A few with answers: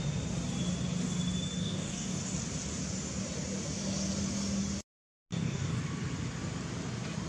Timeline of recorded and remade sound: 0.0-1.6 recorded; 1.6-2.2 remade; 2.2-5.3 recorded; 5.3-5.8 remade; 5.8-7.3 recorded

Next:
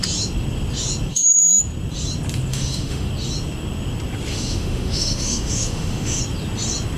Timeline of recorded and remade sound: 0.0-1.1 recorded; 1.1-1.6 remade; 1.6-2.5 recorded; 2.5-3.1 remade; 3.1-4.3 recorded; 4.3-6.2 remade; 6.2-7.0 recorded

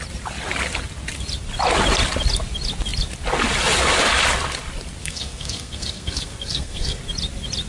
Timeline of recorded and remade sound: 0.0-5.0 recorded; 5.0-7.0 remade; 7.0-7.7 recorded